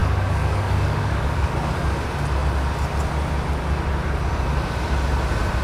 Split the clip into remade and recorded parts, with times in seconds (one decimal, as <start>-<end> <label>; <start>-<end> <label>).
0.0-1.7 remade; 1.7-5.6 recorded